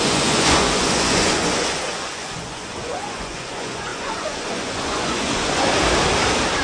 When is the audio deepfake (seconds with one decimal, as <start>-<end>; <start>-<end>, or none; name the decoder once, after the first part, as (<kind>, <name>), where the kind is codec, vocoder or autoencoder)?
0.0-5.7 (vocoder, Vocos)